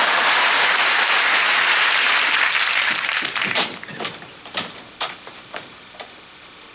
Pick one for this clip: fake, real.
fake